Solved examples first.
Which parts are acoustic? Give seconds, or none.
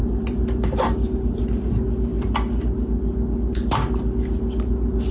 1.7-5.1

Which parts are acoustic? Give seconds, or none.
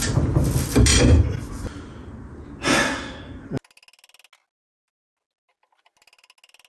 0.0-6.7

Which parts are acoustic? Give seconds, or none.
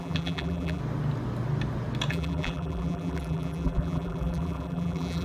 0.8-2.1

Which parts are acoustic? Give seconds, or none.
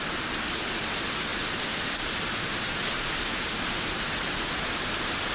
0.0-1.3; 4.1-5.3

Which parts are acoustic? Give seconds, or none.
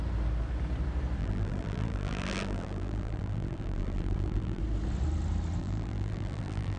0.0-1.2; 4.6-5.6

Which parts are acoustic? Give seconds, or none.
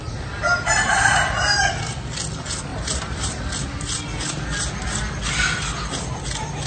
0.0-0.4; 1.7-2.7; 3.4-6.7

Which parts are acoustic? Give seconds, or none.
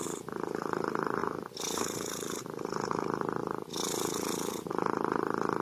0.0-0.6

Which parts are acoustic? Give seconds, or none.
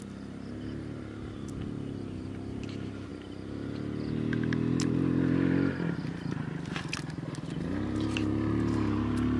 0.0-9.4